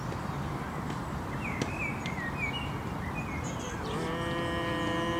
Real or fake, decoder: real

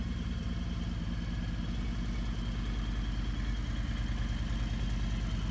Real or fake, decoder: real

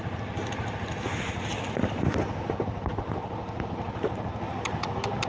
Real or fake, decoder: real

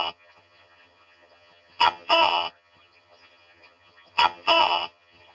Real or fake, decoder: fake, vocoder, HiFi-GAN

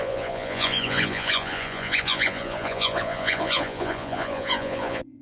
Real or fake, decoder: fake, vocoder, Vocos